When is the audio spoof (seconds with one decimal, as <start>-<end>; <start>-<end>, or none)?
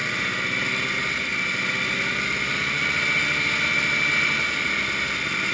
none